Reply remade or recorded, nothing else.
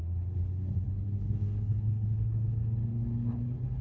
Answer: remade